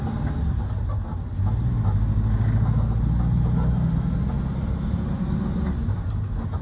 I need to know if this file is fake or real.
real